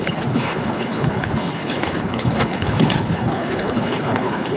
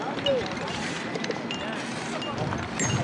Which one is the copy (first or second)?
first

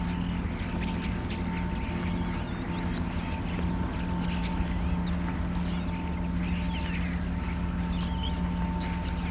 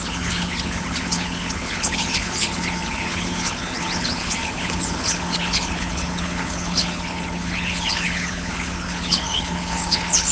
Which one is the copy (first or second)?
second